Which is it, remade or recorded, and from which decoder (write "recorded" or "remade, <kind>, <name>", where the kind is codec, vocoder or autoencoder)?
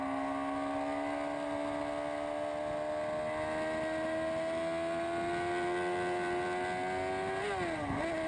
recorded